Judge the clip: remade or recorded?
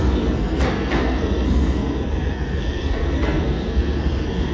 remade